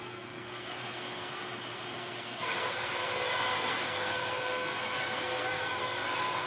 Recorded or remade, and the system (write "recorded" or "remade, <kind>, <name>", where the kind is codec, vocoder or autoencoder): remade, codec, SNAC